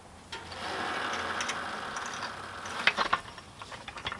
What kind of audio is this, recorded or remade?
recorded